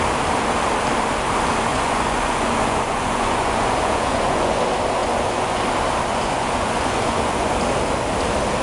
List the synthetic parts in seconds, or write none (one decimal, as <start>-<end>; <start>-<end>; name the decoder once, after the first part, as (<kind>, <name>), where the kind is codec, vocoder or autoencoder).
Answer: 1.7-4.6 (vocoder, Vocos); 5.0-5.6; 6.1-7.5